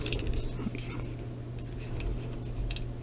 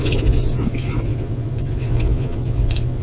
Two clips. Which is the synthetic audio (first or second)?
second